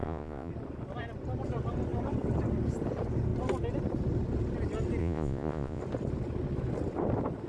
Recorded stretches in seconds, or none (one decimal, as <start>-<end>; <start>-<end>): 0.5-5.0; 5.8-7.5